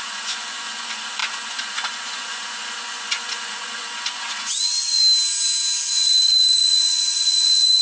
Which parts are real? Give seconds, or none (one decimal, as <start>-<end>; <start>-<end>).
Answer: 5.0-5.9